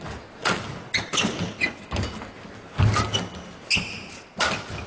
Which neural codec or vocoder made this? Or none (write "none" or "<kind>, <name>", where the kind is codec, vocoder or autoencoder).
none